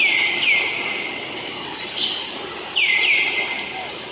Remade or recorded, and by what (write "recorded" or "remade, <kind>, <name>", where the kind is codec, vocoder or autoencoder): recorded